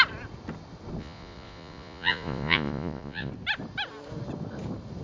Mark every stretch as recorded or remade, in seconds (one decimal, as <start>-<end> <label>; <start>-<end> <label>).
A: 0.0-1.0 recorded; 1.0-3.3 remade; 3.3-5.0 recorded